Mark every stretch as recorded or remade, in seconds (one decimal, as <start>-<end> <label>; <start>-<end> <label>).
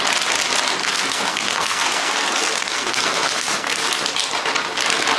0.0-0.8 recorded; 0.8-3.9 remade; 3.9-5.2 recorded